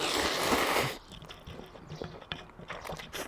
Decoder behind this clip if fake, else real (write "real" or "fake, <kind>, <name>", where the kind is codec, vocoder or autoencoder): fake, vocoder, BigVGAN v2